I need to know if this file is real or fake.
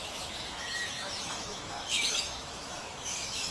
fake